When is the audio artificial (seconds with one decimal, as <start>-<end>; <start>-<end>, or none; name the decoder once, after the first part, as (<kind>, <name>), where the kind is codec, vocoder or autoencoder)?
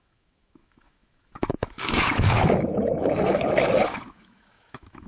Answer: 0.0-5.1 (autoencoder, DAC-VAE)